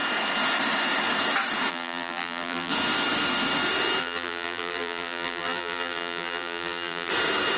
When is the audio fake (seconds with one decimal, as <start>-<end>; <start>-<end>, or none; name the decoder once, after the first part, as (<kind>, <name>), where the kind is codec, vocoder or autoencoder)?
1.7-2.7 (vocoder, BigVGAN v2); 4.0-7.1

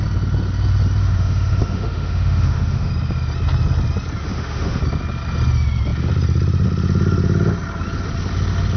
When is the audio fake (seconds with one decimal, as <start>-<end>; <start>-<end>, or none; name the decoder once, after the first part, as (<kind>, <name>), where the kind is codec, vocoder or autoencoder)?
1.0-2.9 (autoencoder, DAC-VAE); 4.2-4.8